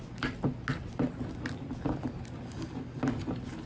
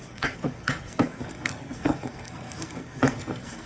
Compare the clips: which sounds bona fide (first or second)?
first